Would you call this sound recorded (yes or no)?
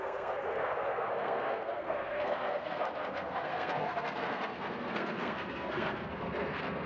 no